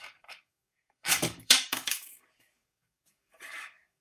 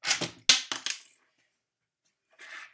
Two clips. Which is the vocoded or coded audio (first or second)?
first